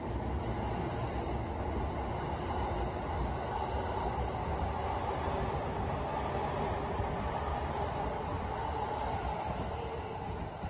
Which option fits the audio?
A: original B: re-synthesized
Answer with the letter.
A